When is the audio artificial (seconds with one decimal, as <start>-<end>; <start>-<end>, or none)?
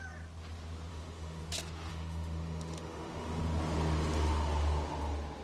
0.9-1.4; 1.9-3.4